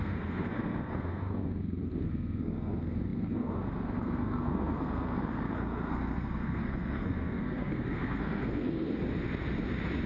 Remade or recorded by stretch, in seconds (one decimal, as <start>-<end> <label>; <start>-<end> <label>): 0.0-9.0 remade; 9.0-10.1 recorded